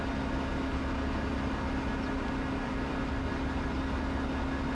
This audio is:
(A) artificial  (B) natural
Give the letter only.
B